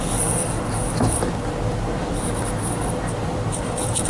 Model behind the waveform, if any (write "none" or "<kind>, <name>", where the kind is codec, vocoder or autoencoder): vocoder, BigVGAN v2